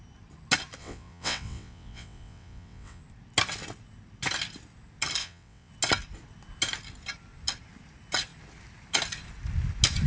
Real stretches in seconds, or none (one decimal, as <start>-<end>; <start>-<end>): 0.0-0.8; 3.0-5.2; 5.7-10.1